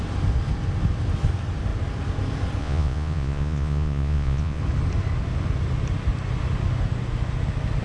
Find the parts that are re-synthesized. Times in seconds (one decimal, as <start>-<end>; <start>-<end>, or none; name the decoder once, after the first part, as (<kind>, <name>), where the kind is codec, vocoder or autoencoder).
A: 2.6-4.6 (vocoder, Vocos)